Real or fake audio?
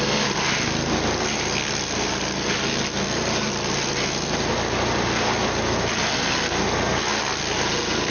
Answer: real